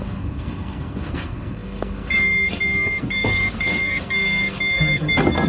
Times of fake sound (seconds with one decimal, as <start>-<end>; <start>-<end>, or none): 0.0-5.5

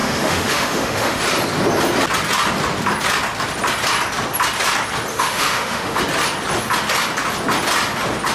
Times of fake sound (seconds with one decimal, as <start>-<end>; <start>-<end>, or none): 0.0-1.2; 5.1-6.0

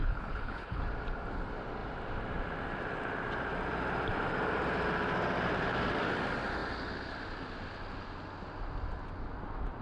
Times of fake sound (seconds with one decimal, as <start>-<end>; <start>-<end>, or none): 0.0-0.8

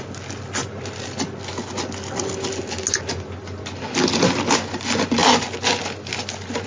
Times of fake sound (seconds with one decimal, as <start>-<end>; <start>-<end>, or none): none

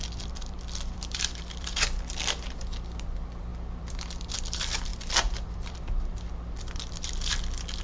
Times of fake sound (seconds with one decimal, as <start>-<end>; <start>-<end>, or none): 0.0-7.8

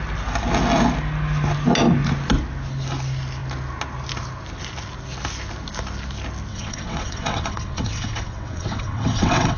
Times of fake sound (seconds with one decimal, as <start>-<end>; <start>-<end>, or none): 6.5-9.6

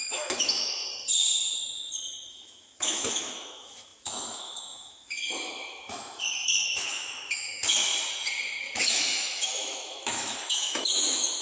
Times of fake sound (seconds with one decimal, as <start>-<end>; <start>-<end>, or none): 0.0-0.8; 2.3-7.9; 8.9-11.4

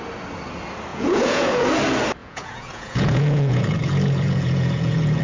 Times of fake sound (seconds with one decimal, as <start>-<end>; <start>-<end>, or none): 0.9-1.7; 2.2-5.2